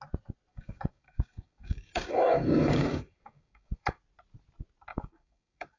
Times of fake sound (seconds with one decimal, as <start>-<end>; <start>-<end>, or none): 0.5-4.0; 4.9-5.8